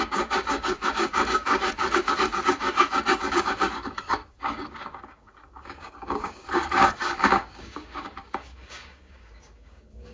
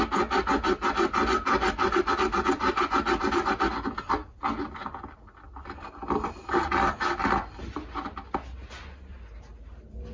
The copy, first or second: first